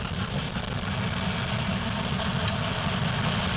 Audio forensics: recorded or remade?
recorded